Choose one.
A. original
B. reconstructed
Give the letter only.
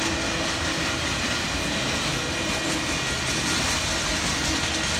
A